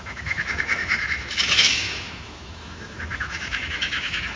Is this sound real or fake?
fake